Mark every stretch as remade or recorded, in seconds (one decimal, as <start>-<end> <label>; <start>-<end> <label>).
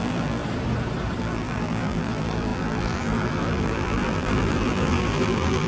0.0-0.4 remade; 0.4-1.2 recorded; 1.2-5.7 remade